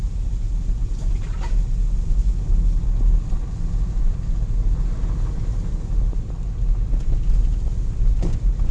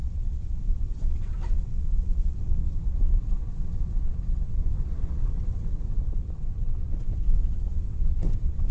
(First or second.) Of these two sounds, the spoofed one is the second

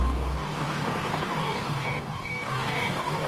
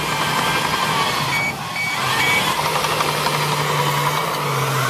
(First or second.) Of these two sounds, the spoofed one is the first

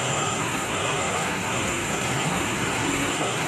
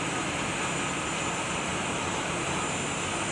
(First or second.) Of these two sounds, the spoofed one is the first